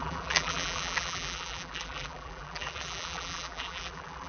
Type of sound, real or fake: fake